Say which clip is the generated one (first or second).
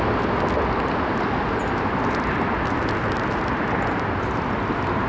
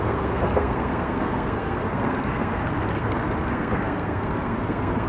second